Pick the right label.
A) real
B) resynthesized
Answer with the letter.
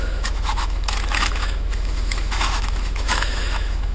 B